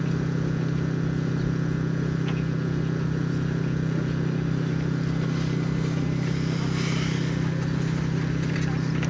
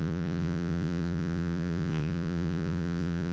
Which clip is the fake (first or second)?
second